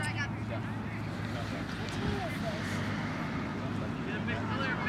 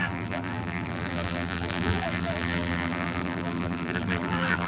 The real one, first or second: first